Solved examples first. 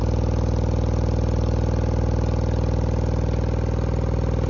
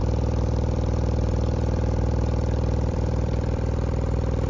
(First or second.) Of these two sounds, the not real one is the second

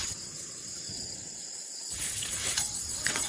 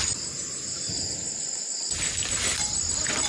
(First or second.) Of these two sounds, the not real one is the first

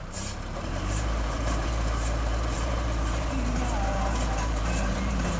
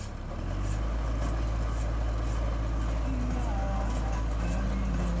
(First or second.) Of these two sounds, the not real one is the first